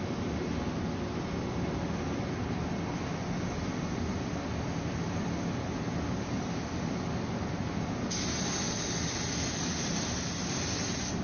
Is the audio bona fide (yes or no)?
yes